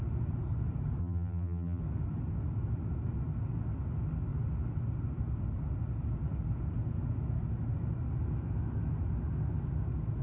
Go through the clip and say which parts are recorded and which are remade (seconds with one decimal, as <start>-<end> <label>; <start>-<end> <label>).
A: 0.0-1.0 recorded; 1.0-1.8 remade; 1.8-10.2 recorded